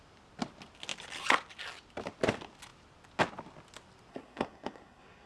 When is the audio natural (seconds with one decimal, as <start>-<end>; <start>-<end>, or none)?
0.0-4.1